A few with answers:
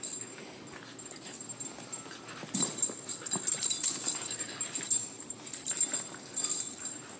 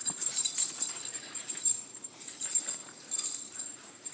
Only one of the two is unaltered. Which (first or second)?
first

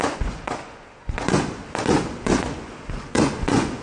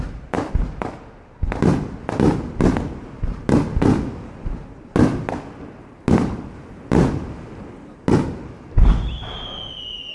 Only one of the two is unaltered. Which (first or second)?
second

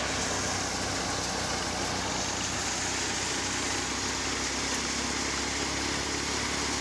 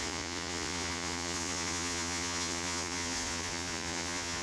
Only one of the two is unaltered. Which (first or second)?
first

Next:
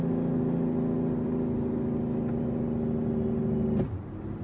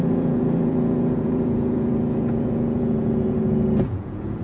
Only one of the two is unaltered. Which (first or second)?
first